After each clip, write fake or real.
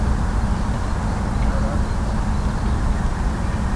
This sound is real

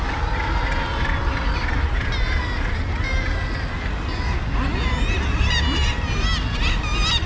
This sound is real